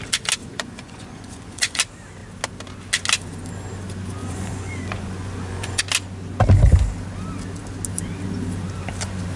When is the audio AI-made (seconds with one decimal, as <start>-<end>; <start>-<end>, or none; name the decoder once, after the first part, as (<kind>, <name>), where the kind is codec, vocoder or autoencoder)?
0.4-1.8 (vocoder, Vocos); 4.2-5.8